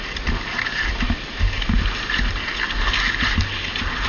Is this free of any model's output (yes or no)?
yes